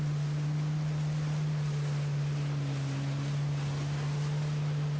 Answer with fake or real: real